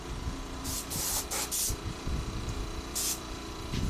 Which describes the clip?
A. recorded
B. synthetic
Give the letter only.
B